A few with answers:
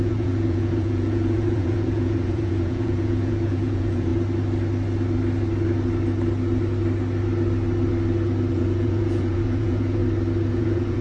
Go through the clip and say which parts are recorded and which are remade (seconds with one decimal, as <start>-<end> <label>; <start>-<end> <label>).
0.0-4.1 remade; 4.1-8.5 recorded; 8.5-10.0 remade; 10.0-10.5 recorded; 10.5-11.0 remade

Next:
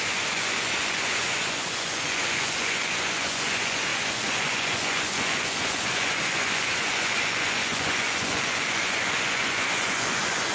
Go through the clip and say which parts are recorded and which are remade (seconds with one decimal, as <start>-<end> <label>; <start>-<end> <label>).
0.0-10.5 remade

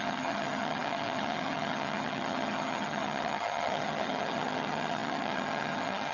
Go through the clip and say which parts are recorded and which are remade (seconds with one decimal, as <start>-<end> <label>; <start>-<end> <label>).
0.0-6.1 remade

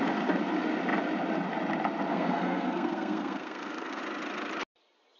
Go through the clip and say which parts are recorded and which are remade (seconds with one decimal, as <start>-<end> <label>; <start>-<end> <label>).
0.0-2.1 recorded; 2.1-4.0 remade; 4.0-5.2 recorded

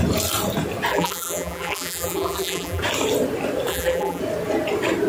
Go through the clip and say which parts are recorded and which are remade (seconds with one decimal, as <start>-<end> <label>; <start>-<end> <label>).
0.0-0.9 recorded; 0.9-2.8 remade; 2.8-3.7 recorded; 3.7-4.2 remade; 4.2-5.1 recorded

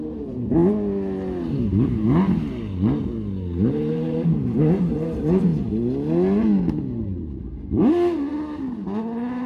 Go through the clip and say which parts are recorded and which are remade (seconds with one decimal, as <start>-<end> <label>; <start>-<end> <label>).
0.0-0.6 remade; 0.6-3.7 recorded; 3.7-5.5 remade; 5.5-7.4 recorded; 7.4-9.5 remade

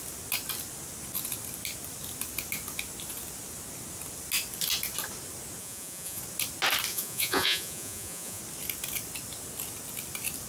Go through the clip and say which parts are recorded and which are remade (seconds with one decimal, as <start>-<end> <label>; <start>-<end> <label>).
0.0-5.6 recorded; 5.6-6.2 remade; 6.2-6.9 recorded; 6.9-8.4 remade; 8.4-10.5 recorded